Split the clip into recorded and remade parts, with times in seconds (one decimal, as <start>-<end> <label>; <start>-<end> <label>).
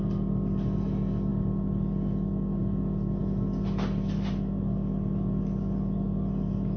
0.0-6.8 recorded